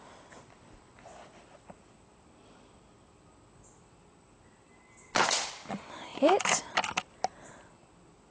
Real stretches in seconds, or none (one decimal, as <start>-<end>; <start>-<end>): 0.0-8.3